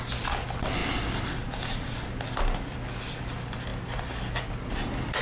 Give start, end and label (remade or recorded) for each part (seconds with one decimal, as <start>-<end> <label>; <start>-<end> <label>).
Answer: 0.0-5.2 recorded